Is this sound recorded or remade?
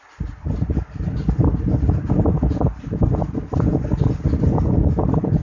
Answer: recorded